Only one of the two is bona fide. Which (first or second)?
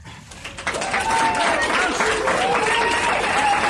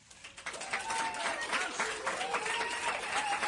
first